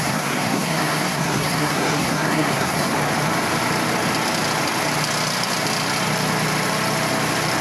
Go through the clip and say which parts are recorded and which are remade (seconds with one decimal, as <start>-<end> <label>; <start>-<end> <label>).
0.0-2.9 remade; 2.9-7.6 recorded